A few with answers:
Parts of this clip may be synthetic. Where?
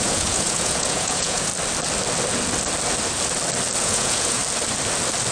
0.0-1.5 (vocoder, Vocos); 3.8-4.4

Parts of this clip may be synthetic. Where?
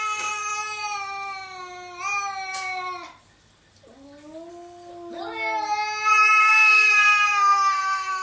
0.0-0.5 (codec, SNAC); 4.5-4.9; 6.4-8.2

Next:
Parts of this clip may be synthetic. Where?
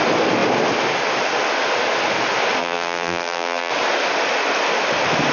2.6-3.7 (vocoder, BigVGAN v2)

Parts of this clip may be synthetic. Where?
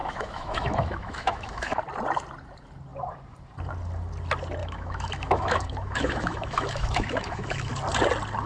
0.0-1.8 (autoencoder, DAC-VAE); 4.6-7.7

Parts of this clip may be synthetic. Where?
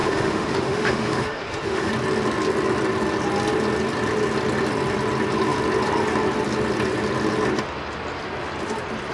0.0-1.9 (autoencoder, DAC-VAE)